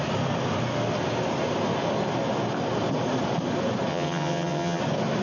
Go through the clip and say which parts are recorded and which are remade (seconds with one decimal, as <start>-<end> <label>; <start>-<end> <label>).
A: 0.0-3.9 recorded; 3.9-4.8 remade; 4.8-5.2 recorded